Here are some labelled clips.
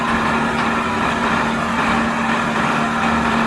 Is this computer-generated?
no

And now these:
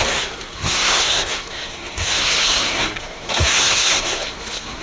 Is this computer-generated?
yes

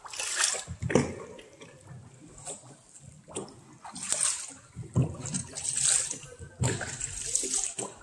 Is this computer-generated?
no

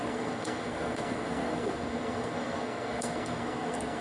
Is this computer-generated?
yes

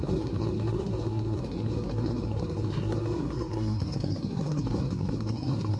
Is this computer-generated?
yes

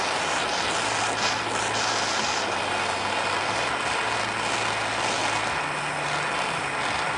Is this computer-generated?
no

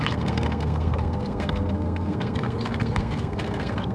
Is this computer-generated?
yes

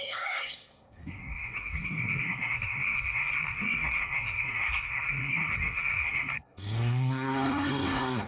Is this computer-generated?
yes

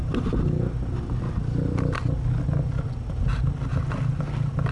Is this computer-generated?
no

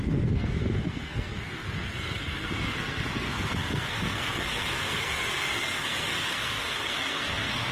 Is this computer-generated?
yes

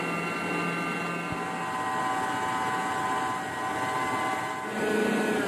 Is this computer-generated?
no